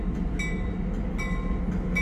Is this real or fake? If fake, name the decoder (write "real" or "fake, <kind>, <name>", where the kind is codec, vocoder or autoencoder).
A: real